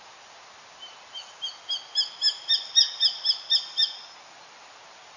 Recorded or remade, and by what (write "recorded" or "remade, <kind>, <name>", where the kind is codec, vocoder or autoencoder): recorded